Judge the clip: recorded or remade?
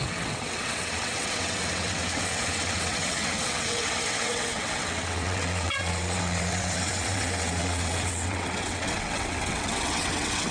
remade